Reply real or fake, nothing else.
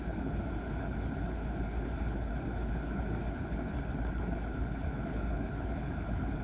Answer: fake